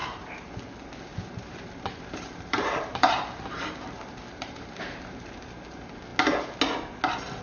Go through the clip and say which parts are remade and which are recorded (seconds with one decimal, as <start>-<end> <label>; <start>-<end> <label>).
0.0-0.5 remade; 0.5-1.1 recorded; 1.1-5.5 remade; 5.5-7.4 recorded